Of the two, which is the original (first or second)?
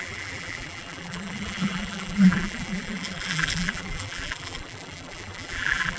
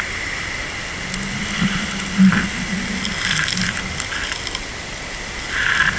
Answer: second